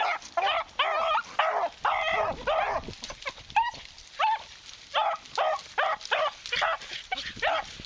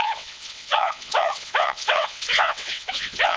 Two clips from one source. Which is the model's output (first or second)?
second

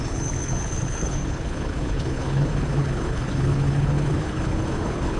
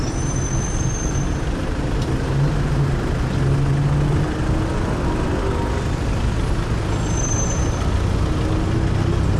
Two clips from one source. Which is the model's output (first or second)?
first